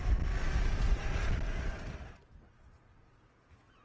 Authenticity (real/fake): real